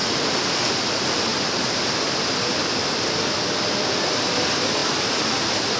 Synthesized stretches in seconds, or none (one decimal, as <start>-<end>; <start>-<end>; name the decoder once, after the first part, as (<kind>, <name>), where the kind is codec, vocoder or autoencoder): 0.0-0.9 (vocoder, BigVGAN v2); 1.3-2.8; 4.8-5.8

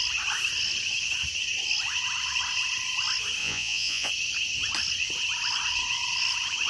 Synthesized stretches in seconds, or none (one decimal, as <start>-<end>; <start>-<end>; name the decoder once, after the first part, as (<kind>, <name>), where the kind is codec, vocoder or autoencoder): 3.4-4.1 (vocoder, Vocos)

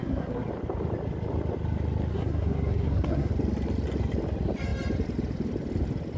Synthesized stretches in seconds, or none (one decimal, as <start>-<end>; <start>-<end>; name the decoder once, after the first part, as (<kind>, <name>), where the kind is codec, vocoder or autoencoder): 0.0-0.5 (codec, SNAC); 2.1-3.3

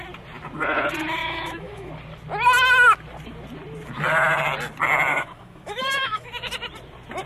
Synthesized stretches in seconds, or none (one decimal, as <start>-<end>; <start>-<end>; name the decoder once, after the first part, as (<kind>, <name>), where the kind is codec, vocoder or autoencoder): 1.2-1.9 (autoencoder, DAC-VAE); 5.1-6.5

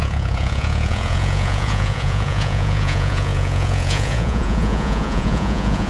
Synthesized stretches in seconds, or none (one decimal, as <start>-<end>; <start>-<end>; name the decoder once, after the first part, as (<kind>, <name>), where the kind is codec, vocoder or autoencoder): 0.0-5.9 (vocoder, Vocos)

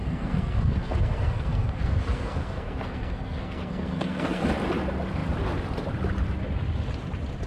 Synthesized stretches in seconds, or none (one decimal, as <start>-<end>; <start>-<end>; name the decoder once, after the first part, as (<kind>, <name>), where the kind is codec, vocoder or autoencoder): 0.0-4.4 (codec, SNAC)

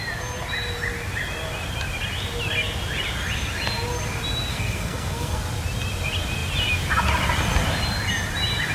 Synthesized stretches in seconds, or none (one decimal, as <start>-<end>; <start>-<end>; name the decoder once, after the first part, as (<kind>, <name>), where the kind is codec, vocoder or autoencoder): 4.5-5.4 (codec, SNAC)

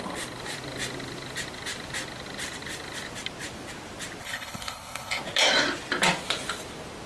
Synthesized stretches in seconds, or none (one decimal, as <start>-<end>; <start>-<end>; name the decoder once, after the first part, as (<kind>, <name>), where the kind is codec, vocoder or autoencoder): 4.2-5.2 (codec, HILCodec)